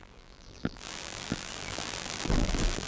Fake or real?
fake